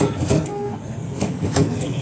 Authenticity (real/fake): fake